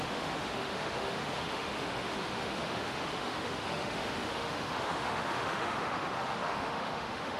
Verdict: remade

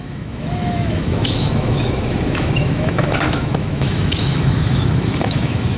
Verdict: remade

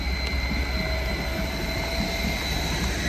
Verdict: recorded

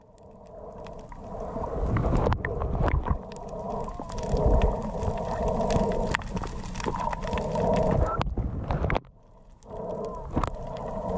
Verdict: recorded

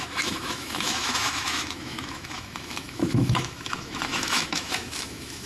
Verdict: remade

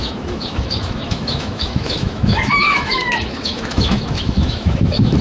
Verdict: remade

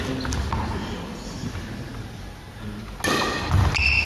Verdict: recorded